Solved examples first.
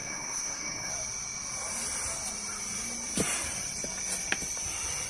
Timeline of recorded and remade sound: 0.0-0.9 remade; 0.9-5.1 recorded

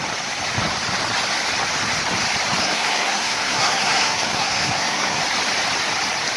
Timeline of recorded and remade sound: 0.0-2.6 recorded; 2.6-5.2 remade; 5.2-6.4 recorded